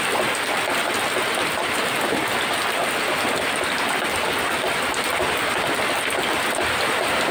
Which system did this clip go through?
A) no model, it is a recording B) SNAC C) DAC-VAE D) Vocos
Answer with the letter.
A